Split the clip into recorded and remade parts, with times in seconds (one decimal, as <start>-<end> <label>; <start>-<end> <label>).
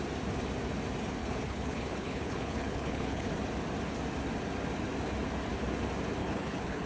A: 0.0-1.2 recorded; 1.2-3.3 remade; 3.3-6.2 recorded; 6.2-6.9 remade